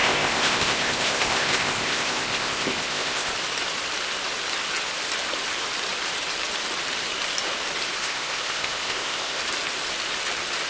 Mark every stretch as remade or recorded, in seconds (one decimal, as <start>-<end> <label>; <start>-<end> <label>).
0.0-3.3 remade; 3.3-8.0 recorded; 8.0-9.4 remade; 9.4-10.7 recorded